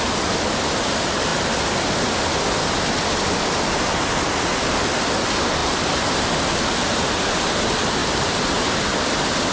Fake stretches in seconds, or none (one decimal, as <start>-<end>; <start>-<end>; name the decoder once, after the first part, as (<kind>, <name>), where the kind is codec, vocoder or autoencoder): 5.6-6.2 (vocoder, BigVGAN v2); 8.0-8.7